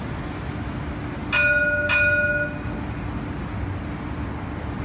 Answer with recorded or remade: recorded